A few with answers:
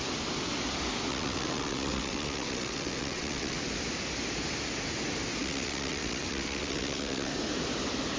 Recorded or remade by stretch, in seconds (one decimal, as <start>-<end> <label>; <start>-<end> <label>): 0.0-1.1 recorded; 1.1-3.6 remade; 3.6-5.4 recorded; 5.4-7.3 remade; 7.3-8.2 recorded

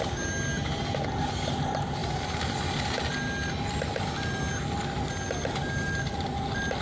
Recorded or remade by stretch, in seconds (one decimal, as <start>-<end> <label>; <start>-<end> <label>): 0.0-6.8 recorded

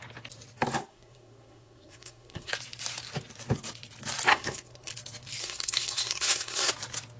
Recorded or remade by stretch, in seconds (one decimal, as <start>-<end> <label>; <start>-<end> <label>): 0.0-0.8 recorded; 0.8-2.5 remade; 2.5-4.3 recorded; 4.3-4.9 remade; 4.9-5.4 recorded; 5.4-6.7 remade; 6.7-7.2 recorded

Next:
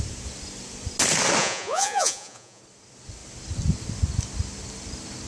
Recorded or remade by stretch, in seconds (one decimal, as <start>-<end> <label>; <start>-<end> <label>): 0.0-1.4 recorded; 1.4-2.6 remade; 2.6-5.3 recorded

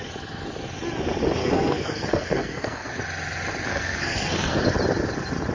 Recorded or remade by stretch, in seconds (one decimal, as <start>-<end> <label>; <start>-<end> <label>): 0.0-1.4 recorded; 1.4-3.0 remade; 3.0-3.7 recorded; 3.7-4.6 remade; 4.6-5.5 recorded

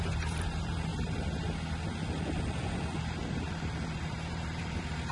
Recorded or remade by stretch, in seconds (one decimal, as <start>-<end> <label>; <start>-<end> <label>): 0.0-0.9 remade; 0.9-4.0 recorded; 4.0-5.1 remade